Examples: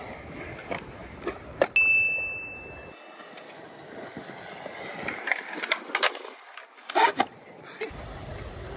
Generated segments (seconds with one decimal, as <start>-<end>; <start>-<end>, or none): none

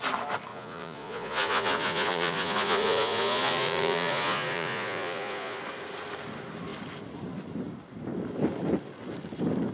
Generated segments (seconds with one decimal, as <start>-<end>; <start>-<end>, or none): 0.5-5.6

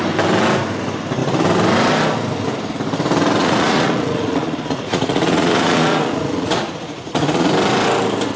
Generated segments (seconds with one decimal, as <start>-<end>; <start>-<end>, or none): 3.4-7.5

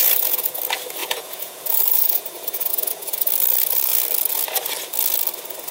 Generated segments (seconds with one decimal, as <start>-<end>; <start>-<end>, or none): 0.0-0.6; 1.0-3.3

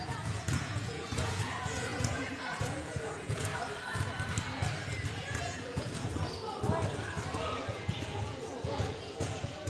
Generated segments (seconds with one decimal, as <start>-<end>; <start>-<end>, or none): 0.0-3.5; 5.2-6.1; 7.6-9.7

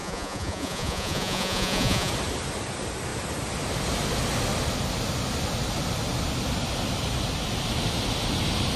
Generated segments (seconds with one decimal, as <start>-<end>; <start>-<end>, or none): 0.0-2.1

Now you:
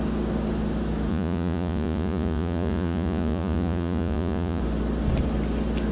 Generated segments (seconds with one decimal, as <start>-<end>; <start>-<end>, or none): 1.1-4.6

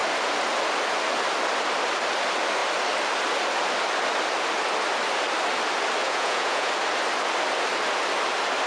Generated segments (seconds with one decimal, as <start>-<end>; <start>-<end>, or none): 6.0-6.7